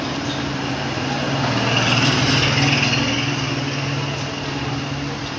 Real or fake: real